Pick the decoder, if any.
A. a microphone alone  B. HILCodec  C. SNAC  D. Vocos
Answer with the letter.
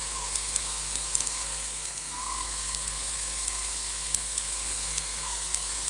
C